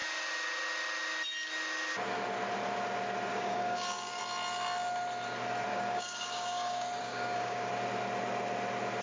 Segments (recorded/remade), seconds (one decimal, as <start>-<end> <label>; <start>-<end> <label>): 0.0-3.3 recorded; 3.3-4.2 remade; 4.2-5.7 recorded; 5.7-7.7 remade; 7.7-9.0 recorded